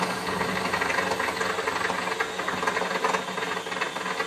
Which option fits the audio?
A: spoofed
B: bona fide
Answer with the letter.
B